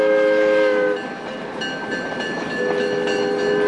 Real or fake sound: real